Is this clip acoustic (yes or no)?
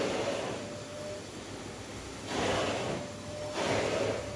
yes